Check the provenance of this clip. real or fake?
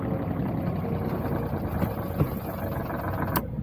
real